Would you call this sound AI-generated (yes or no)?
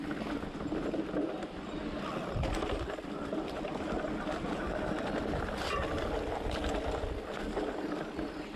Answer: no